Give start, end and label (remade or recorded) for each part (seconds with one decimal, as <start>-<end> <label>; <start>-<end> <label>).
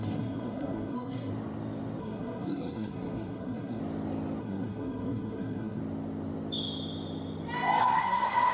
0.0-1.3 remade; 1.3-2.0 recorded; 2.0-3.8 remade; 3.8-4.4 recorded; 4.4-5.8 remade; 5.8-7.8 recorded; 7.8-8.5 remade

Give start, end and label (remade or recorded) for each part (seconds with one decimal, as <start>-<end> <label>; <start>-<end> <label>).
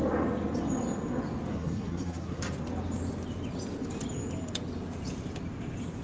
0.0-1.5 recorded; 1.5-2.4 remade; 2.4-6.0 recorded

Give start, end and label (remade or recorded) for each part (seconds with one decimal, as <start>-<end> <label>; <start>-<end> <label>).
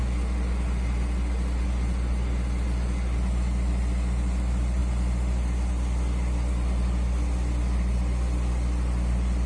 0.0-9.5 recorded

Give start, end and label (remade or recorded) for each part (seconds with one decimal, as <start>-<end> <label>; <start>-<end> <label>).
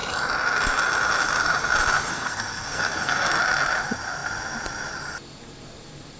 0.0-2.1 recorded; 2.1-3.4 remade; 3.4-6.2 recorded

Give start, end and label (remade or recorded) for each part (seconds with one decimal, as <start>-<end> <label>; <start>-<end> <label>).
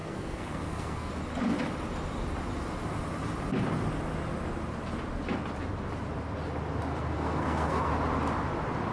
0.0-1.1 remade; 1.1-6.9 recorded; 6.9-7.9 remade; 7.9-8.9 recorded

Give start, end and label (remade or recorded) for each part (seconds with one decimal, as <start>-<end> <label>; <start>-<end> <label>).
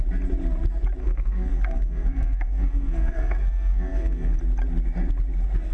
0.0-1.0 recorded; 1.0-4.4 remade; 4.4-5.7 recorded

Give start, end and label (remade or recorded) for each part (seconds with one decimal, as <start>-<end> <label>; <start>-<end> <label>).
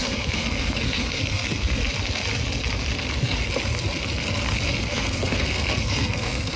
0.0-1.8 remade; 1.8-4.9 recorded; 4.9-6.6 remade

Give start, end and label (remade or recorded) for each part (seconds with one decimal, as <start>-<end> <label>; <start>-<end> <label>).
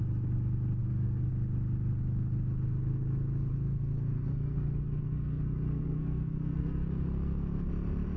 0.0-0.8 recorded; 0.8-1.3 remade; 1.3-3.5 recorded; 3.5-7.7 remade; 7.7-8.2 recorded